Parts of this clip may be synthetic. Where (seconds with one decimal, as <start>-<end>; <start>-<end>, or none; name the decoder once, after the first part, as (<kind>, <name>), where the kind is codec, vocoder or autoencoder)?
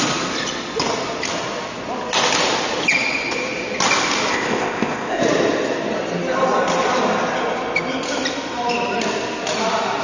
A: 4.3-5.2 (codec, ZipCodec)